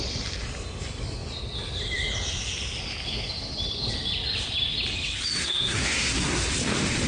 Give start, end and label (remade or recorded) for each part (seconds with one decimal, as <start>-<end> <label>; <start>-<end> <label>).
0.0-5.4 recorded; 5.4-6.5 remade; 6.5-7.1 recorded